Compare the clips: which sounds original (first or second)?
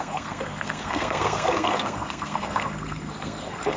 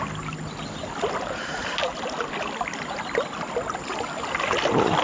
second